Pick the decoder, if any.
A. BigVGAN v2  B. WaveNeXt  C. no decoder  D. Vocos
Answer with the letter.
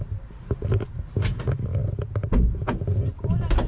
C